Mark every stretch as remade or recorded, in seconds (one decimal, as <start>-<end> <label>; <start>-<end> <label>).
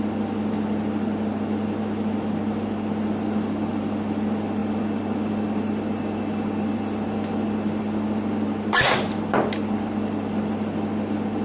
0.0-11.4 recorded